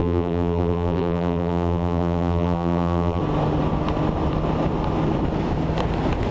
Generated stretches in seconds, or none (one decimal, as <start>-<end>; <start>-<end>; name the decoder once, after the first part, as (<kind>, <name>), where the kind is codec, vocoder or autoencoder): 0.0-3.2 (vocoder, BigVGAN v2)